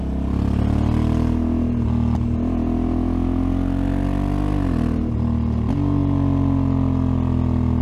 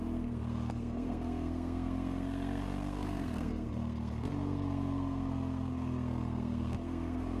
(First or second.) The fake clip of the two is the second